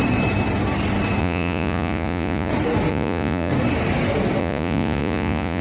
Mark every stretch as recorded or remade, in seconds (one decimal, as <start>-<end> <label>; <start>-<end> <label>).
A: 0.0-1.2 recorded; 1.2-2.5 remade; 2.5-2.9 recorded; 2.9-3.5 remade; 3.5-4.4 recorded; 4.4-5.6 remade